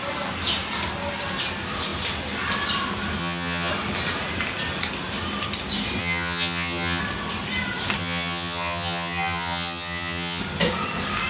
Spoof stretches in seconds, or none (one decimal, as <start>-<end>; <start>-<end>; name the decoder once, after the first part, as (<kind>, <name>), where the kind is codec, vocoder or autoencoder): 3.2-3.7 (vocoder, HiFi-GAN); 6.0-7.0; 8.0-10.4